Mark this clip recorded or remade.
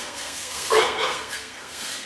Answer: remade